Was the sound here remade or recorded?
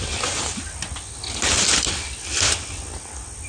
recorded